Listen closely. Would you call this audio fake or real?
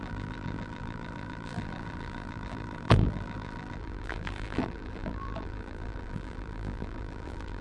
fake